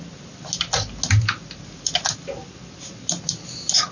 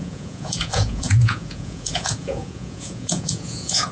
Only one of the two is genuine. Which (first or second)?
first